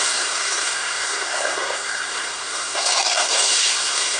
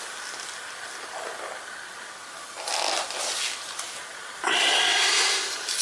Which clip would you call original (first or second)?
second